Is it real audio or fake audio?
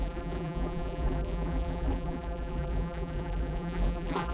fake